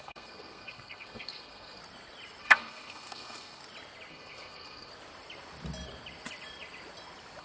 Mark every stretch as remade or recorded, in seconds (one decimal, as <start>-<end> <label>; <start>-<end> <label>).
0.0-1.8 remade; 1.8-2.4 recorded; 2.4-3.6 remade; 3.6-4.1 recorded; 4.1-4.9 remade; 4.9-7.4 recorded